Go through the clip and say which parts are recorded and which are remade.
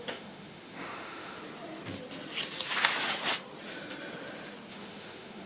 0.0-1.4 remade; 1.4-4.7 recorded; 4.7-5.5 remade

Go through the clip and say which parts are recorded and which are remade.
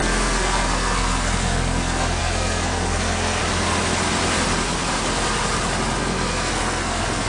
0.0-3.4 remade; 3.4-6.0 recorded; 6.0-7.3 remade